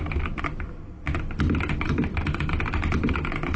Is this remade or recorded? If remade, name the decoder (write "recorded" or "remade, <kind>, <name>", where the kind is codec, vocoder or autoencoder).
recorded